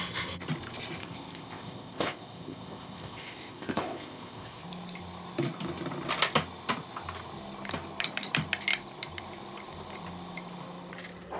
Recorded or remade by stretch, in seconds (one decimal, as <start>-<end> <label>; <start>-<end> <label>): 0.0-1.0 recorded; 1.0-4.6 remade; 4.6-11.4 recorded